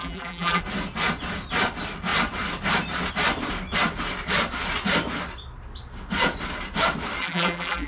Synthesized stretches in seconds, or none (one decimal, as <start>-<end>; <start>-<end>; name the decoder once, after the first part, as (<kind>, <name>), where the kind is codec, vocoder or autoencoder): 0.0-0.6 (vocoder, BigVGAN v2); 7.2-7.9